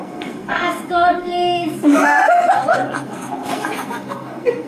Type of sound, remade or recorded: remade